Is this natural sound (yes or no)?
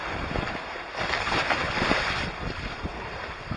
yes